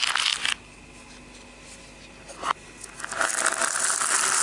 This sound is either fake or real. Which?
real